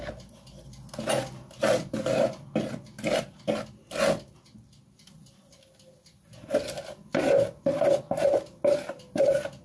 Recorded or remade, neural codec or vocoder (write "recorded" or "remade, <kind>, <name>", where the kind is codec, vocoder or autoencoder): recorded